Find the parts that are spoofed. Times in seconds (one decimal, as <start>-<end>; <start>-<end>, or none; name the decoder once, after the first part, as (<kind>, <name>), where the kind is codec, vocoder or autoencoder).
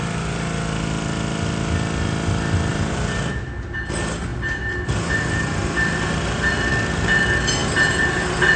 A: 2.7-3.2 (vocoder, BigVGAN v2); 4.3-6.7